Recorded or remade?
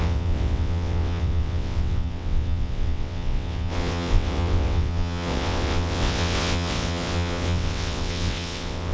remade